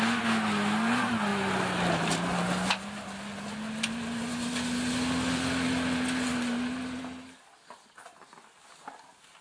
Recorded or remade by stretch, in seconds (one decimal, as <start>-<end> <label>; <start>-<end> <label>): 0.0-9.4 recorded